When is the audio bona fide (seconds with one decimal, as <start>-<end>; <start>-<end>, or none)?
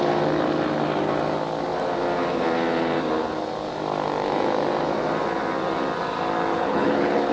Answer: 0.0-6.5